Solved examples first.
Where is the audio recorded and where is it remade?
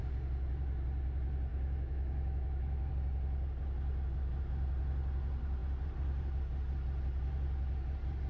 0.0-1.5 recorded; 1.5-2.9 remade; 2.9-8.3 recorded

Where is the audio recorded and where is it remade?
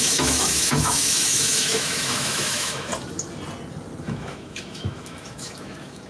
0.0-2.9 remade; 2.9-4.0 recorded; 4.0-6.1 remade